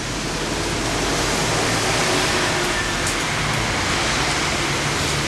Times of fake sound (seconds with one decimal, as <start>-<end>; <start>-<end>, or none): none